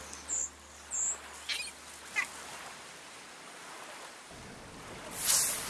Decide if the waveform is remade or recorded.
recorded